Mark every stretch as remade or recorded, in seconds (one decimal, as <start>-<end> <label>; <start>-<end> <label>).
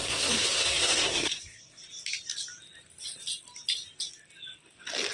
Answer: 0.0-1.8 remade; 1.8-5.1 recorded